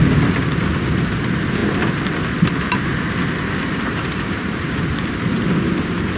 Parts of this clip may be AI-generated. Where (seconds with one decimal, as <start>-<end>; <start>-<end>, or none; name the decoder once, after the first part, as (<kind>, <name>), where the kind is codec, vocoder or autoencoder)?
3.9-4.9 (vocoder, BigVGAN v2)